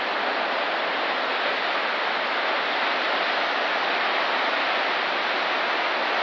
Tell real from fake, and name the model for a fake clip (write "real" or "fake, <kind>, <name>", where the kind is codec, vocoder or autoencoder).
real